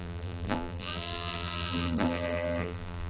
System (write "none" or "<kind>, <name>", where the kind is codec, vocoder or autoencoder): vocoder, BigVGAN v2